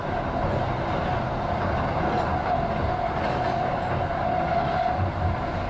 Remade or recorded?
recorded